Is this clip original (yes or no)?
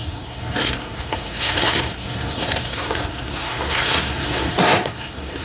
no